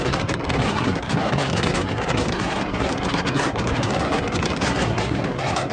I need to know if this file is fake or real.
fake